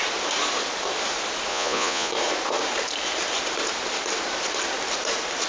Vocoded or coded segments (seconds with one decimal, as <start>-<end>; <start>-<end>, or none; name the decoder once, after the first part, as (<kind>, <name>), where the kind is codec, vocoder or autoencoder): 1.5-2.1 (vocoder, Vocos)